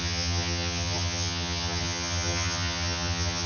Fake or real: fake